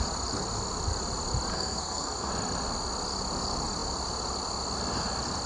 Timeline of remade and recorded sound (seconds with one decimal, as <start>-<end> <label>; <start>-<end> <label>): 0.0-1.5 recorded; 1.5-2.3 remade; 2.3-5.5 recorded